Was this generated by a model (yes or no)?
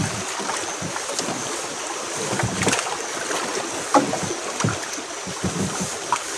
no